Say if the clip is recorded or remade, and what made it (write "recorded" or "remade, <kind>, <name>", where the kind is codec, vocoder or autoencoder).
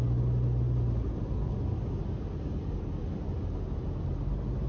recorded